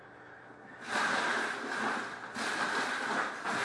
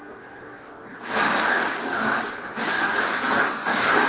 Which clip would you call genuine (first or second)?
first